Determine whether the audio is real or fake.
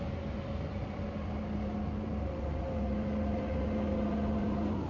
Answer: real